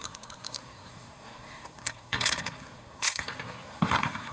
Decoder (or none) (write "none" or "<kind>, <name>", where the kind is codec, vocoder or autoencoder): codec, SNAC